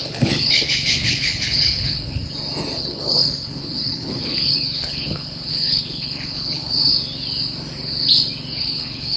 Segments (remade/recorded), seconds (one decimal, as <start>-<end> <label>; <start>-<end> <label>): 0.0-2.2 remade; 2.2-2.8 recorded; 2.8-6.9 remade; 6.9-8.6 recorded; 8.6-9.2 remade